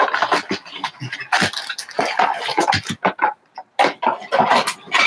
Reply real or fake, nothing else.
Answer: real